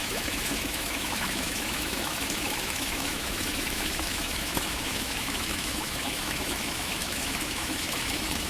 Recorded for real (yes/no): no